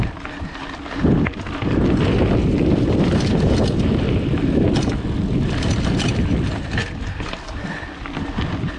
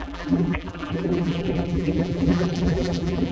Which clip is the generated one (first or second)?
second